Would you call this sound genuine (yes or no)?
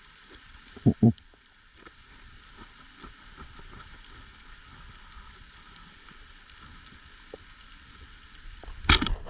yes